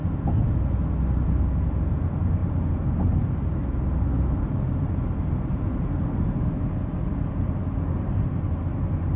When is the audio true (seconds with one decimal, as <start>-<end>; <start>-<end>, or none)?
0.0-9.2